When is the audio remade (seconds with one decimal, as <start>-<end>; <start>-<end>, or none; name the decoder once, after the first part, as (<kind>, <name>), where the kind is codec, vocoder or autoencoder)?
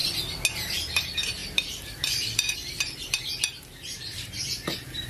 0.5-5.1 (vocoder, BigVGAN v2)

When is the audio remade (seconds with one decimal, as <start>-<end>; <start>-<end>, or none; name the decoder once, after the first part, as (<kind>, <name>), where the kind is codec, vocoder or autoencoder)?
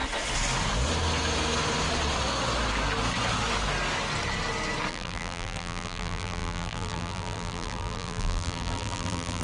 4.9-9.4 (vocoder, BigVGAN v2)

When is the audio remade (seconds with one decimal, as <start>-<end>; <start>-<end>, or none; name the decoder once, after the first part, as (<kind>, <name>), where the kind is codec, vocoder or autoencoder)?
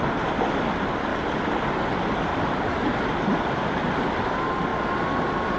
none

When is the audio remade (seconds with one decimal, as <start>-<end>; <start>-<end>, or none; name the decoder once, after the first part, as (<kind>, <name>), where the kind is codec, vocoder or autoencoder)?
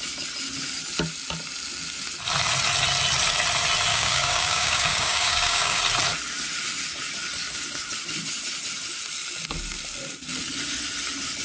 3.9-5.8 (codec, DAC)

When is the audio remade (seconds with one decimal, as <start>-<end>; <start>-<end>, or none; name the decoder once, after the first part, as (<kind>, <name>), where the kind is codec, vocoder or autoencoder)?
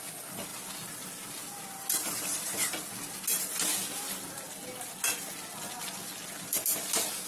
none